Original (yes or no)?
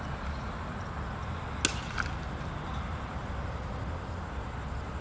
yes